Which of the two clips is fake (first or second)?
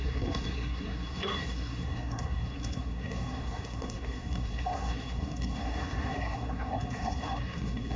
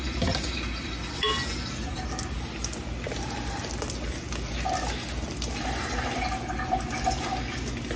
first